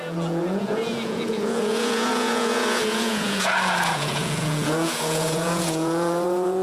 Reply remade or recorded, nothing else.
remade